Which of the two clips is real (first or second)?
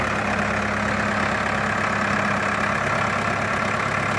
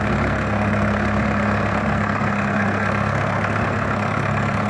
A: first